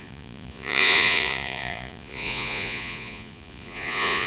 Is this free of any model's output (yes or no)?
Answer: no